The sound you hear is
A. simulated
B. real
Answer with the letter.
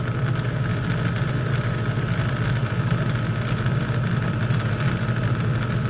B